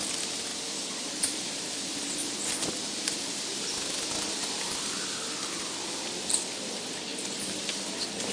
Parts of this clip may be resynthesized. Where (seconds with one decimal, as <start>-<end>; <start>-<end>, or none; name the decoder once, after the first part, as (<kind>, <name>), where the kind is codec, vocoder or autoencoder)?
none